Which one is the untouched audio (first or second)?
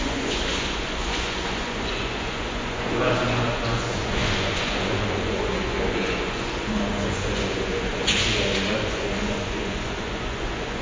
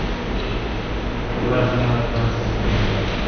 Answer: second